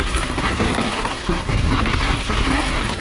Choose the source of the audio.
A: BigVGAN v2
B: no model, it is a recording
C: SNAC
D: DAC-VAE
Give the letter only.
C